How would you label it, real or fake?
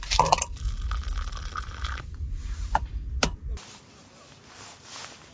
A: real